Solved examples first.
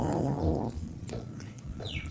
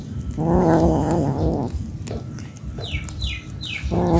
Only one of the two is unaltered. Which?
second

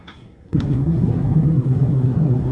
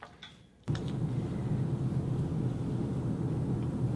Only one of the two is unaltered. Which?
second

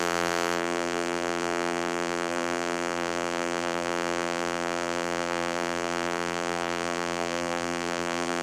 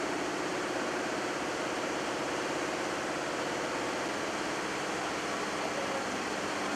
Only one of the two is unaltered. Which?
second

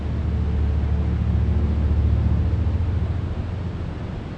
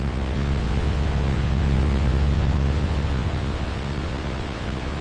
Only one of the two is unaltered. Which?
first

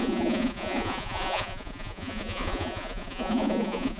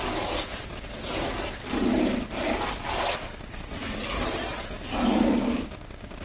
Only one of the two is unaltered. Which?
second